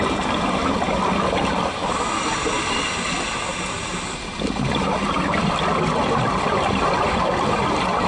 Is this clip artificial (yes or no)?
no